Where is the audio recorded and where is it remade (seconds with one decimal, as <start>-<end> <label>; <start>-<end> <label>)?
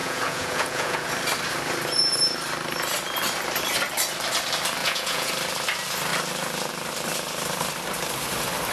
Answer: 0.0-1.1 remade; 1.1-4.8 recorded; 4.8-5.3 remade; 5.3-8.7 recorded